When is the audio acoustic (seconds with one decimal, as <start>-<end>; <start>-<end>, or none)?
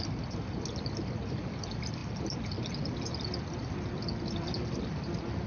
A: 0.0-5.5